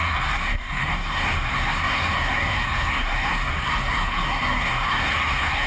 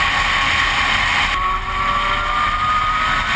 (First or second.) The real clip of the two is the second